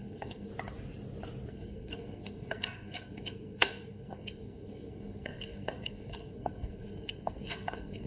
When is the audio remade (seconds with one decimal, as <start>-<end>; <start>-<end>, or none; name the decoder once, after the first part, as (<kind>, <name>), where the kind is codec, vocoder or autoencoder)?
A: 0.0-0.5 (codec, SNAC); 1.5-8.1